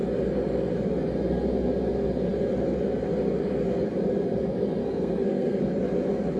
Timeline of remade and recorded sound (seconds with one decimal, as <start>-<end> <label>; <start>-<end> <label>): 0.0-4.8 recorded; 4.8-5.6 remade; 5.6-6.4 recorded